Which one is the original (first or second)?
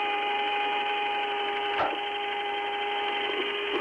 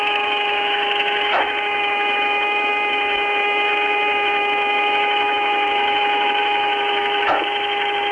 first